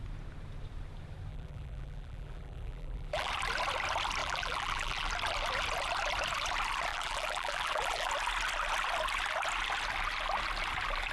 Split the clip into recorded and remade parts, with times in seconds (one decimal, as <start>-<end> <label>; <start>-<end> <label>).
0.0-1.3 recorded; 1.3-3.3 remade; 3.3-4.2 recorded; 4.2-5.1 remade; 5.1-6.9 recorded; 6.9-8.1 remade; 8.1-11.1 recorded